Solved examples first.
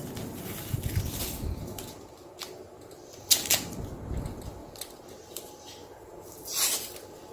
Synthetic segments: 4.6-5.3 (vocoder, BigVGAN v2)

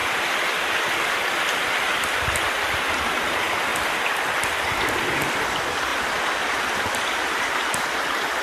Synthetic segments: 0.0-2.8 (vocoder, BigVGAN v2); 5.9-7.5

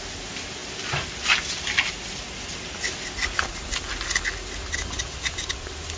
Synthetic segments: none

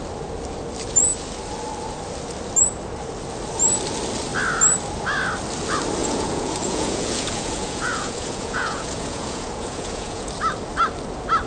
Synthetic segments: 6.0-10.3 (vocoder, Vocos)

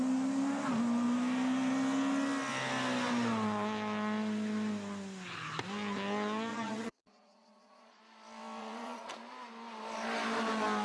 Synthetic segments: 6.5-8.0 (vocoder, Vocos); 8.6-9.1